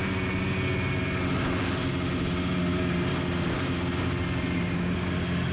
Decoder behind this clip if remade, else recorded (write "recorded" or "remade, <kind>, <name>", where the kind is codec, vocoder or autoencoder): recorded